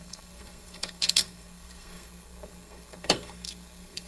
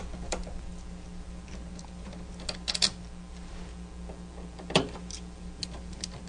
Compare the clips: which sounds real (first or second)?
second